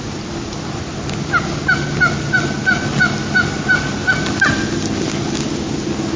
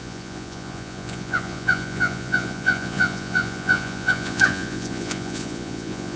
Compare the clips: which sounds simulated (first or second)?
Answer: second